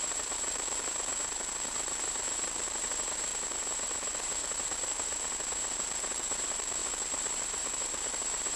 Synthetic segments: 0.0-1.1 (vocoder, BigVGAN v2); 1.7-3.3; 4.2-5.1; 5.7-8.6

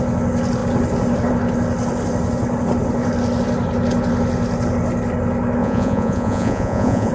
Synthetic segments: 5.6-7.1 (vocoder, Vocos)

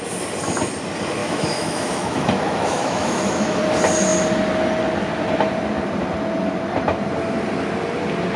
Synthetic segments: 1.2-3.6 (autoencoder, DAC-VAE)

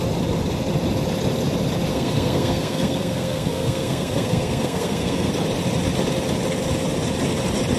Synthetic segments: 1.9-5.3 (codec, SNAC)

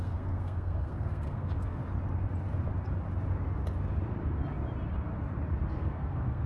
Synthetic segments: 0.0-1.8 (codec, SNAC); 5.7-6.5

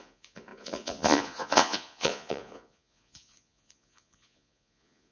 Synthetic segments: 0.0-5.1 (vocoder, Vocos)

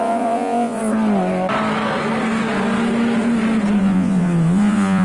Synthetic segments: 0.0-0.8 (vocoder, Vocos); 3.8-5.0

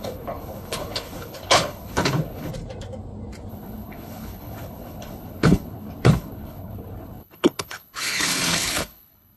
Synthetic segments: 0.0-2.5 (codec, HILCodec); 3.5-9.4